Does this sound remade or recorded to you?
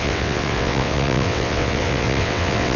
remade